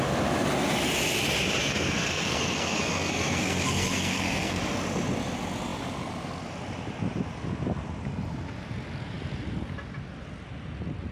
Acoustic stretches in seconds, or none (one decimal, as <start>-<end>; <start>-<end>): 0.0-1.6; 4.6-11.1